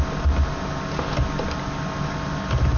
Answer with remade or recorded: recorded